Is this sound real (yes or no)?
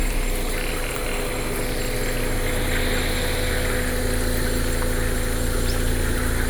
yes